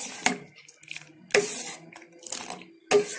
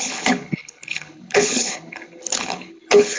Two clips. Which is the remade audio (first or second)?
second